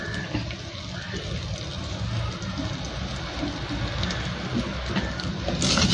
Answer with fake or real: real